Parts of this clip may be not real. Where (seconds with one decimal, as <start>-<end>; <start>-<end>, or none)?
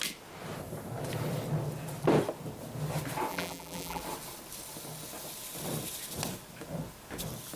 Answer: 3.3-4.0